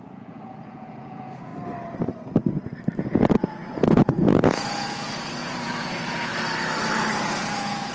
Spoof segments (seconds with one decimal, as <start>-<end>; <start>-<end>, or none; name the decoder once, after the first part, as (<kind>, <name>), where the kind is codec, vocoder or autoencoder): 0.0-1.5 (vocoder, Vocos); 3.0-6.3; 7.1-7.9